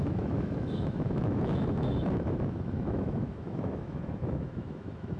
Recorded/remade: remade